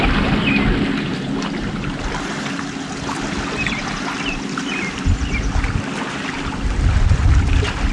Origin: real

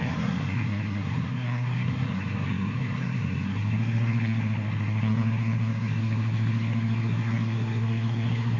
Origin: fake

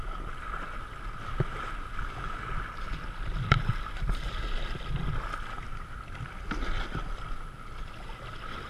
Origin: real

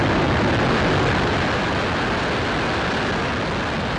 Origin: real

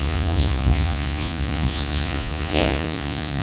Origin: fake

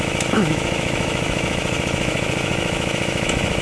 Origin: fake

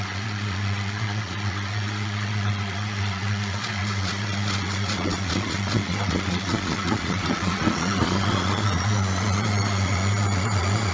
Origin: fake